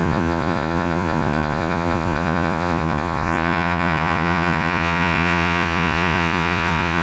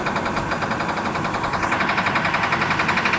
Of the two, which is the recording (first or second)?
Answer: second